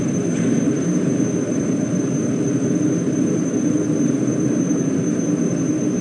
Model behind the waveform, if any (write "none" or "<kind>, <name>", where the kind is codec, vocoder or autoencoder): vocoder, BigVGAN v2